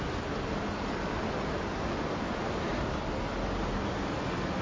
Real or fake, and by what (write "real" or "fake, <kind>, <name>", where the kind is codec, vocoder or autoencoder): real